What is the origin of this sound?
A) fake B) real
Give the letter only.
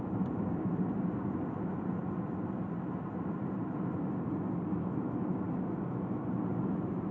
B